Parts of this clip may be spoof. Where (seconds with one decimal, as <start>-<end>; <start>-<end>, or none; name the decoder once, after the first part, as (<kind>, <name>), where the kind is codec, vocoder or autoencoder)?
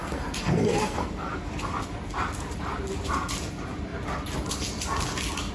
0.0-1.3 (codec, SNAC)